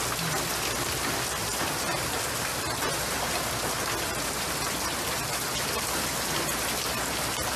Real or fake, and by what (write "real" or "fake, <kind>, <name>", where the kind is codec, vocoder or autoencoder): real